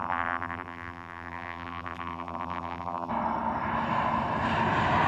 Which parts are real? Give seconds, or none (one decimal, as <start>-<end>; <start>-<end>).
3.1-5.1